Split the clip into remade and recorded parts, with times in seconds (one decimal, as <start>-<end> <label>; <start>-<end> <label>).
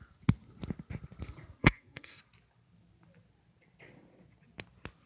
0.0-1.6 recorded; 1.6-2.2 remade; 2.2-5.1 recorded